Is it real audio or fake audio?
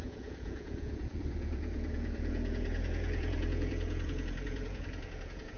fake